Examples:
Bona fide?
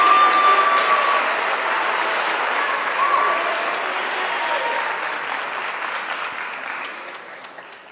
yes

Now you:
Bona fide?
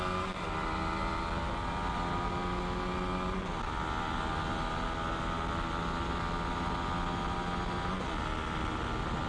yes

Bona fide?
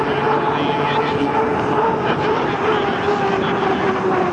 yes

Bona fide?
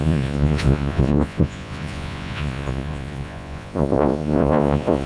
no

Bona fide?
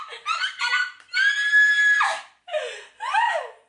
yes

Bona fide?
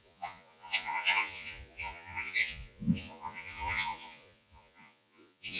no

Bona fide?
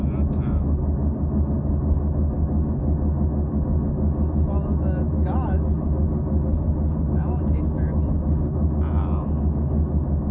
yes